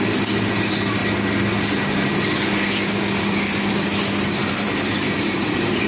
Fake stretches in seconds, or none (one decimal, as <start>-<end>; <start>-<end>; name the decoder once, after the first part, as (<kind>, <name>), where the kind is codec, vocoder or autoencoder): 4.4-5.9 (vocoder, BigVGAN v2)